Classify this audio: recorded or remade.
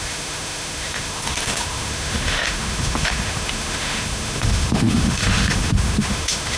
remade